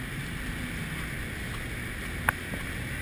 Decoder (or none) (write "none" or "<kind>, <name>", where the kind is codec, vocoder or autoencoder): none